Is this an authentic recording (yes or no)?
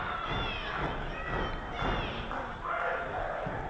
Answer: yes